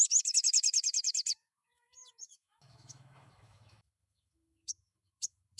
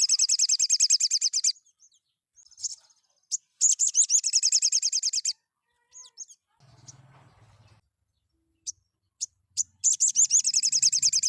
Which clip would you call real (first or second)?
second